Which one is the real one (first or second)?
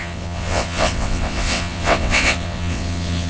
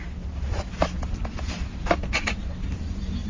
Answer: second